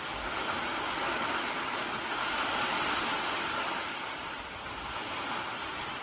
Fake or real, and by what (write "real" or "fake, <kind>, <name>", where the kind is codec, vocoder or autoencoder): real